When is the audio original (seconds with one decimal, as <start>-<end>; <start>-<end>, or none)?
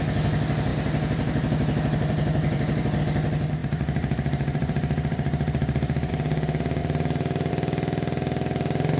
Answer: 0.0-0.7; 3.0-3.6; 6.1-6.8; 7.5-9.0